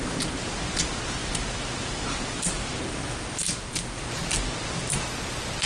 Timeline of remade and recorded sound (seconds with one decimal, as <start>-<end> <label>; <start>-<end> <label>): 0.0-5.7 recorded